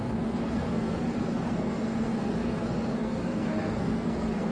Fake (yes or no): yes